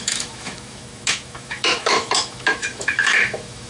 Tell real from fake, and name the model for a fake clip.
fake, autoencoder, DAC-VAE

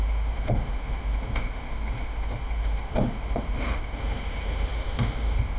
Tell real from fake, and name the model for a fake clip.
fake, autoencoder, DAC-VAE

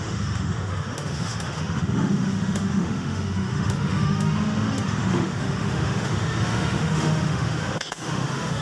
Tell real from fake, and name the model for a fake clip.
fake, autoencoder, DAC-VAE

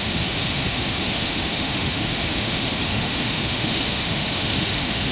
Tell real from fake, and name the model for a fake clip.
fake, autoencoder, DAC-VAE